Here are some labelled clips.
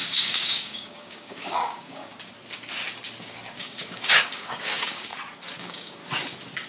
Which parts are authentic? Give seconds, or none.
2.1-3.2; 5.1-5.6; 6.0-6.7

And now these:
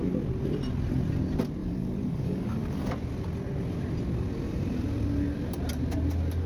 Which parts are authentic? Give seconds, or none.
0.0-1.6; 2.9-6.5

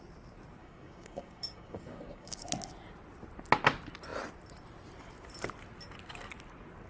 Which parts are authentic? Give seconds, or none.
0.0-0.6; 2.5-6.9

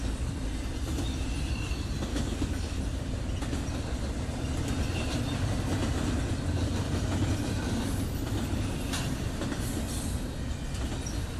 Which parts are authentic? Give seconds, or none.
0.0-2.1; 2.8-11.4

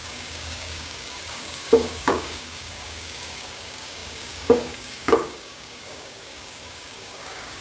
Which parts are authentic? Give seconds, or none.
none

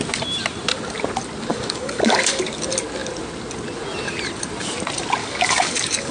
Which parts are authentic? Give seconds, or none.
0.0-1.5; 2.4-5.2

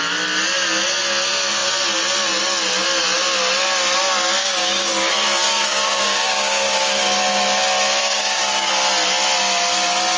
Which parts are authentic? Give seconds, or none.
0.0-4.4; 5.1-5.5; 7.0-8.0; 8.7-10.2